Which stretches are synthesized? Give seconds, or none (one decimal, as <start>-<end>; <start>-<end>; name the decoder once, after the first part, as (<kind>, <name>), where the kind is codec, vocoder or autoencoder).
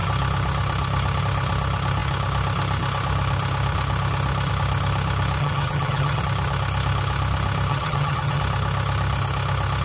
5.4-6.2 (vocoder, HiFi-GAN); 7.7-8.4